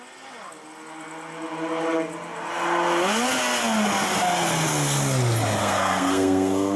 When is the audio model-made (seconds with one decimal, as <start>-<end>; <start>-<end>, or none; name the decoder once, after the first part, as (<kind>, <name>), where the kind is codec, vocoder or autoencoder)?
5.6-6.8 (codec, SNAC)